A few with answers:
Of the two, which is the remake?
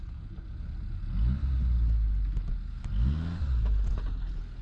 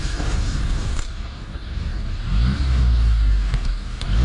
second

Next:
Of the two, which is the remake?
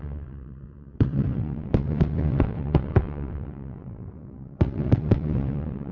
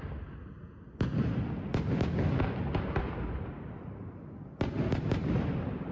first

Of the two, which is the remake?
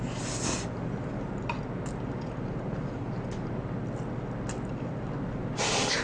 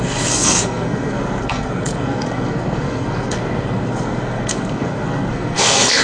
second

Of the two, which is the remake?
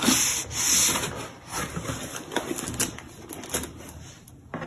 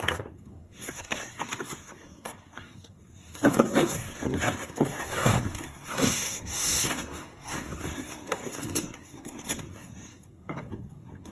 second